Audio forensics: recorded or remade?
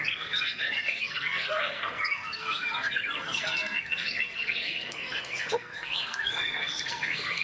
remade